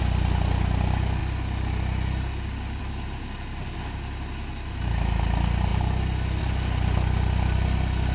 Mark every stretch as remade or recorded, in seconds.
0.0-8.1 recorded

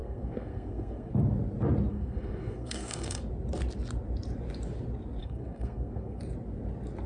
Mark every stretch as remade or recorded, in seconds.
0.0-1.1 remade; 1.1-1.9 recorded; 1.9-3.2 remade; 3.2-5.2 recorded; 5.2-6.2 remade; 6.2-7.1 recorded

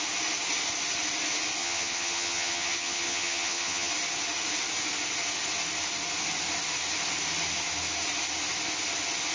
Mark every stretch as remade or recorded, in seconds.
0.0-1.6 recorded; 1.6-3.9 remade; 3.9-9.3 recorded

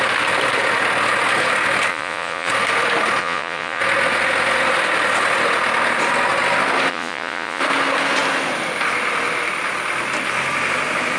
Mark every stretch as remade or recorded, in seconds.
0.0-1.9 recorded; 1.9-2.5 remade; 2.5-3.2 recorded; 3.2-3.8 remade; 3.8-6.9 recorded; 6.9-7.6 remade; 7.6-11.2 recorded